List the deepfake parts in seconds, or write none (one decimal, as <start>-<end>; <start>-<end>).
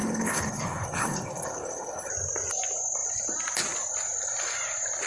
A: 0.0-2.1